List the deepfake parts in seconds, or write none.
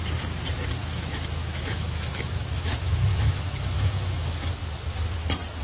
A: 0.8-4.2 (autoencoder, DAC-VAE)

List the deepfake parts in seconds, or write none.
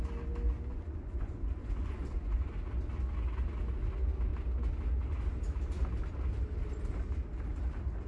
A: 0.7-2.5 (vocoder, Vocos)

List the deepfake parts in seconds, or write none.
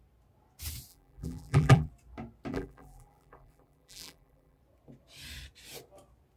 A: 0.9-1.9 (vocoder, BigVGAN v2); 2.5-4.6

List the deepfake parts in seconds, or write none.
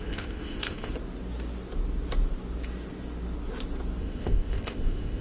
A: 0.0-0.9 (codec, ZipCodec); 4.0-5.2